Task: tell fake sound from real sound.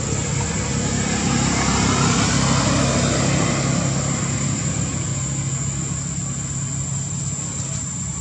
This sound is real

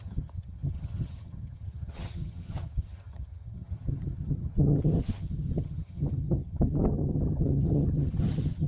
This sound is fake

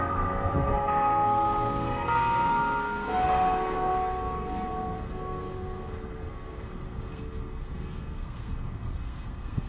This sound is fake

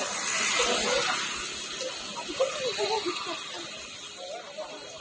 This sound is real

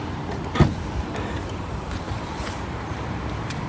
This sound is fake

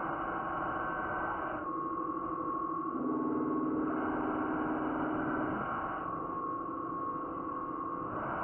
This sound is real